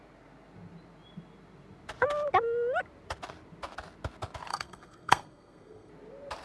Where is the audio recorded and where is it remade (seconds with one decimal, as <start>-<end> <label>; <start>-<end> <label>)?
0.0-4.5 recorded; 4.5-5.9 remade; 5.9-6.4 recorded